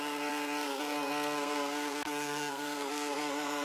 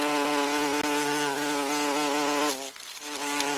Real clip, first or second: second